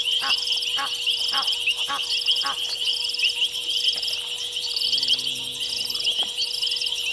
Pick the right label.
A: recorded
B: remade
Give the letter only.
A